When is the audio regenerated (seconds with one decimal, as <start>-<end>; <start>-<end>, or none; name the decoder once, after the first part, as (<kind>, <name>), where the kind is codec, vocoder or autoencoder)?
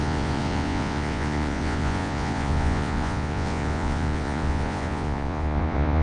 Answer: 0.0-6.0 (vocoder, Vocos)